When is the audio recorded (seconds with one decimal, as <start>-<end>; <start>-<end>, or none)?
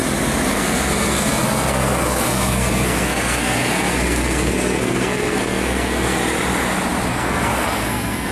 0.0-0.5; 6.2-7.1